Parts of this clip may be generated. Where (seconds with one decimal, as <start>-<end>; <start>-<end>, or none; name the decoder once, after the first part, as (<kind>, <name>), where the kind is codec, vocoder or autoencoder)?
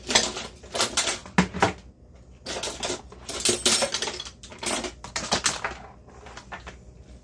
none